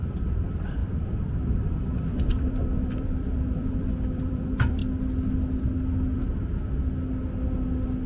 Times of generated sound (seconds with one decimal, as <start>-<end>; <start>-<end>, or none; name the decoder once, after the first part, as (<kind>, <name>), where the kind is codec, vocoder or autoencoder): 0.0-4.8 (vocoder, BigVGAN v2)